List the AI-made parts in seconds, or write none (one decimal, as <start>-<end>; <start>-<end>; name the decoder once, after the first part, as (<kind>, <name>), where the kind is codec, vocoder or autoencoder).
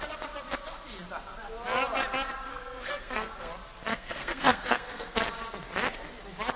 2.5-3.5 (codec, SNAC); 3.9-5.2